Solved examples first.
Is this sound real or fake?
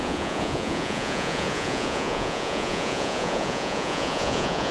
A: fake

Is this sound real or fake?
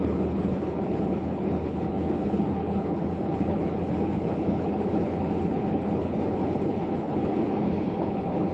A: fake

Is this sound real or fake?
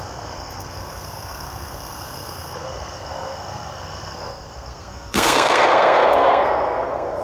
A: fake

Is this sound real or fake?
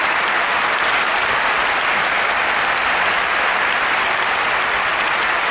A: real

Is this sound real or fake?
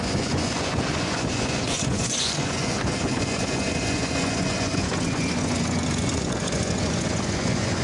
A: fake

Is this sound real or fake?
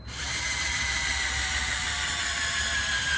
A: fake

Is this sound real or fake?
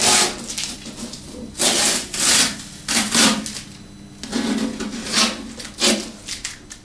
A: real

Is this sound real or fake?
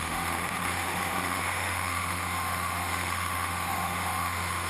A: fake